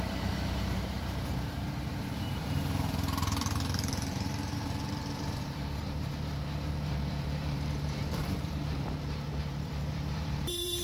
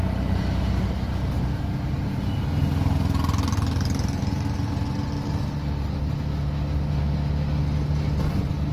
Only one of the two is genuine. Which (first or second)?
second